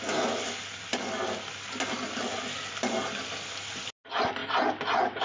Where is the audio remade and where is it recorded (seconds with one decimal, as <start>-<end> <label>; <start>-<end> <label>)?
0.0-5.2 recorded